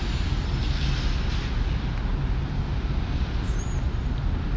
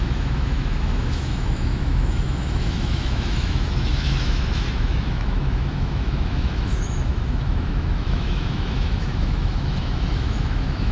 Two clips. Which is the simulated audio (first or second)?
second